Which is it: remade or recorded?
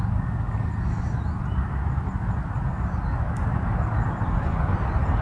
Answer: recorded